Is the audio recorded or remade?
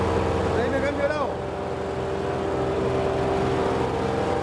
recorded